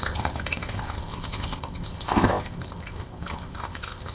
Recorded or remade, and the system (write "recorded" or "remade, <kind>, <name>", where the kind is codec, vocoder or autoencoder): remade, codec, ZipCodec